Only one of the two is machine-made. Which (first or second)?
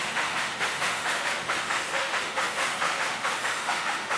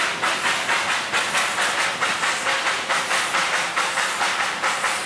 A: first